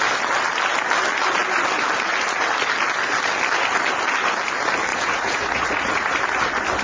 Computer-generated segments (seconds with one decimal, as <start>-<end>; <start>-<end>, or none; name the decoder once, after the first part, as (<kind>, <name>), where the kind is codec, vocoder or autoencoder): 4.9-6.1 (vocoder, Vocos)